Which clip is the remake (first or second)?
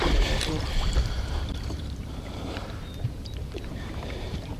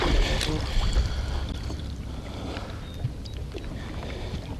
first